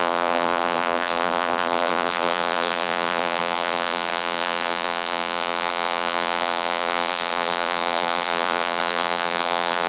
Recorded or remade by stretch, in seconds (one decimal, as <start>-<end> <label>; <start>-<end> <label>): 0.0-9.9 remade